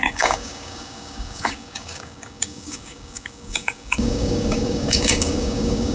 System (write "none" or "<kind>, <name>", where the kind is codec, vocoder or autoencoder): codec, DAC